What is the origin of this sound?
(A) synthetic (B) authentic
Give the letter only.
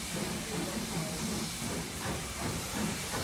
A